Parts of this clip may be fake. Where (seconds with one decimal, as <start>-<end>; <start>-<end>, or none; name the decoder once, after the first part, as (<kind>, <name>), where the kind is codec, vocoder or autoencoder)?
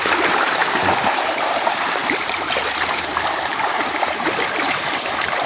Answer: 0.0-5.5 (vocoder, BigVGAN v2)